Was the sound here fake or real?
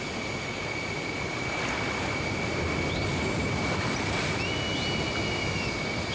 real